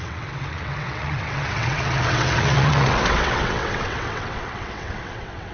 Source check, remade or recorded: remade